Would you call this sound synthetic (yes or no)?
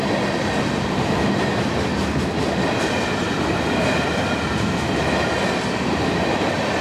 no